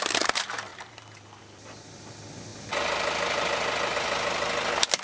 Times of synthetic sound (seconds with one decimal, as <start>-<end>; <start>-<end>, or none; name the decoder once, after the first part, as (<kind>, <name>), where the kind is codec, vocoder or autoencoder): none